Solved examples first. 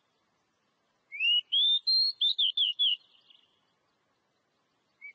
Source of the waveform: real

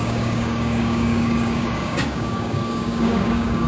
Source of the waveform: fake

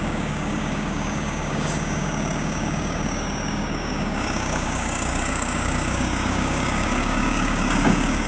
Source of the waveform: fake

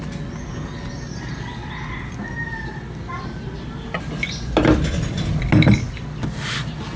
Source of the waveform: real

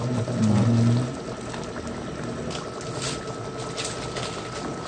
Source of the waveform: real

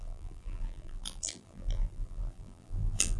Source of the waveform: fake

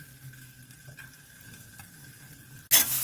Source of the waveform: real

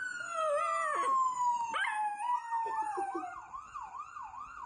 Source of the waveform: real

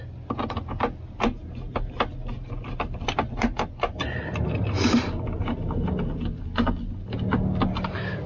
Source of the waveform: real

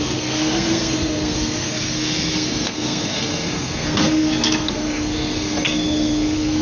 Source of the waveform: fake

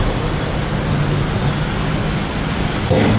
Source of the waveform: real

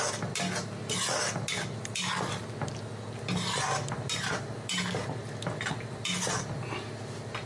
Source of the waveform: real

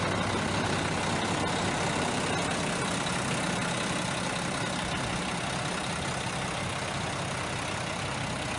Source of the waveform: real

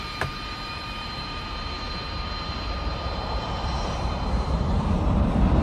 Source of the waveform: fake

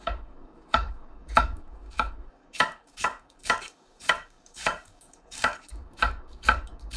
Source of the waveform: fake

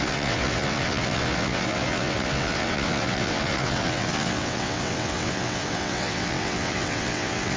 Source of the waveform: fake